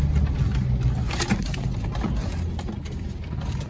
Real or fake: real